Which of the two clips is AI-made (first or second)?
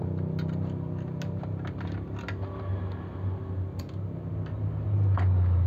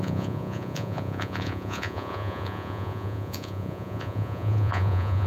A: second